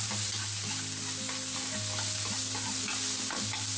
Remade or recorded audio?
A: recorded